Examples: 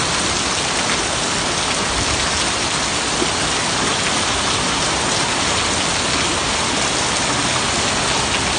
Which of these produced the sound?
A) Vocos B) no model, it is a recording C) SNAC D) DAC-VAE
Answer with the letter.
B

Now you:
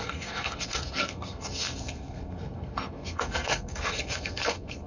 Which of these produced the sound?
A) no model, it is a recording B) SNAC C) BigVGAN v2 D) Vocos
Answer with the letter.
B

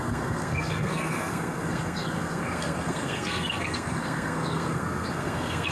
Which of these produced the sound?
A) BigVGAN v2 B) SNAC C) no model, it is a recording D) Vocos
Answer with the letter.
B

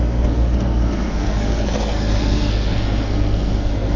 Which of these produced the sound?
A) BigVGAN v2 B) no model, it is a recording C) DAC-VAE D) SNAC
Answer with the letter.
D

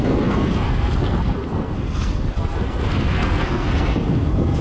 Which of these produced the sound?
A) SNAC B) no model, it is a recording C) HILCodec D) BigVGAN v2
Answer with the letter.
A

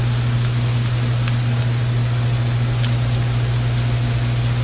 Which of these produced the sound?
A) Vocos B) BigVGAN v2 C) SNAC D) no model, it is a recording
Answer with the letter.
D